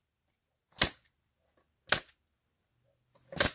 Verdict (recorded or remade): recorded